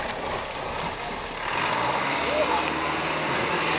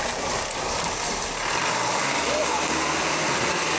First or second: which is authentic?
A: first